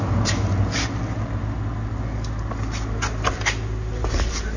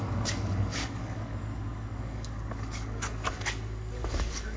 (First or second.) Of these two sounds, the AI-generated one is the second